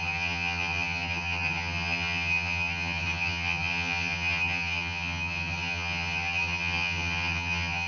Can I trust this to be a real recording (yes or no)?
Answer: no